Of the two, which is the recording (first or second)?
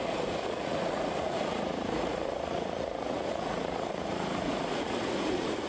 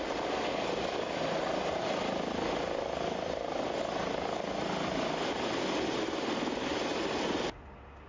second